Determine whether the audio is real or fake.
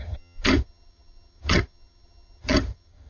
fake